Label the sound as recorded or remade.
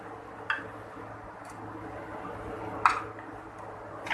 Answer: recorded